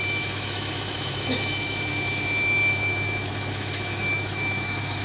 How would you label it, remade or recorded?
remade